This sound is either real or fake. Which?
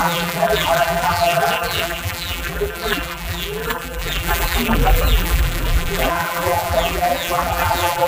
fake